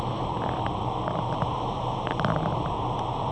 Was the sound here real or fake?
fake